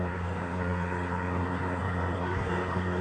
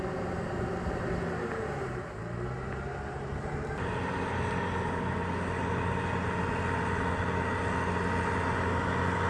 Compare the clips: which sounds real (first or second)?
second